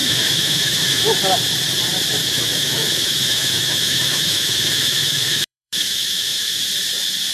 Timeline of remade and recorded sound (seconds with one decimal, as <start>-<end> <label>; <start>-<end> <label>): 0.0-1.0 remade; 1.0-2.2 recorded; 2.2-6.6 remade; 6.6-7.3 recorded